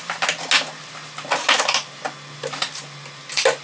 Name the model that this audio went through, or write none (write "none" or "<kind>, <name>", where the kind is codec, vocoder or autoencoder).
none